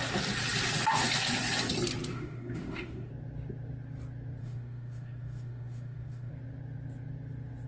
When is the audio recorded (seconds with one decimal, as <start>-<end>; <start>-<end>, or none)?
0.0-2.1; 3.1-4.4; 6.3-7.7